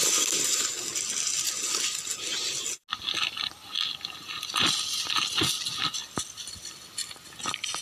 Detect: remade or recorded recorded